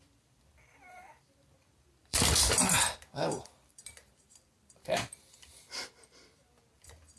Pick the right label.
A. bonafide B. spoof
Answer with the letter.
B